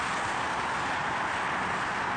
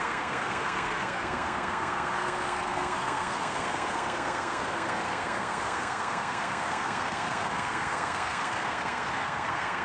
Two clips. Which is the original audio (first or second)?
first